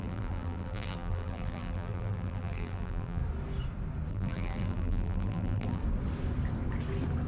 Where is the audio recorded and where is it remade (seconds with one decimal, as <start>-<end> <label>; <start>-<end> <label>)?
0.0-3.2 remade; 3.2-4.1 recorded; 4.1-5.8 remade; 5.8-7.3 recorded